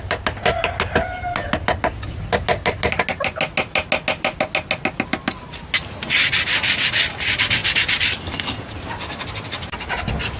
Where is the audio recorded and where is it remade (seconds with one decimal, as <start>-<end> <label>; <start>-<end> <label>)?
0.0-10.4 recorded